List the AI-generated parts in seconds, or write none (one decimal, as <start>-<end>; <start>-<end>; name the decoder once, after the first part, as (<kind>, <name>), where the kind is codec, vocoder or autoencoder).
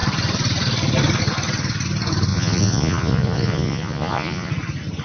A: 2.3-4.5 (vocoder, Vocos)